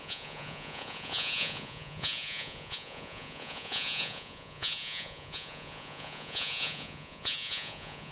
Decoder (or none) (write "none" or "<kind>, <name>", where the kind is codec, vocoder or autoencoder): vocoder, Vocos